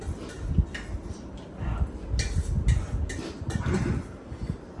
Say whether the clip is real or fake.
real